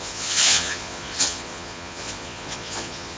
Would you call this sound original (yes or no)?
no